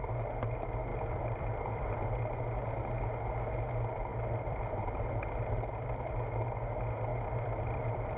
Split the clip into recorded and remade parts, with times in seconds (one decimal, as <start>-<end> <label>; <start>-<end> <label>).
0.0-0.9 recorded; 0.9-2.2 remade; 2.2-4.1 recorded; 4.1-6.1 remade; 6.1-7.1 recorded; 7.1-8.2 remade